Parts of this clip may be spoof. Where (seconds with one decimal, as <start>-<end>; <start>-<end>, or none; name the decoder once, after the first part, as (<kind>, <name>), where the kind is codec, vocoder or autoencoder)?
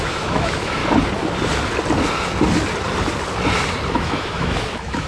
0.0-0.8 (autoencoder, DAC-VAE); 3.9-5.1